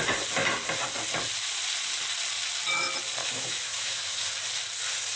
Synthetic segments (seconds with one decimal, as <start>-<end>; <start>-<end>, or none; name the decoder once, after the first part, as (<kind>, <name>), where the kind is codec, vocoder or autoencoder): 3.2-4.2 (autoencoder, DAC-VAE)